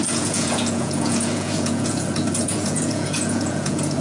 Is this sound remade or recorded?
remade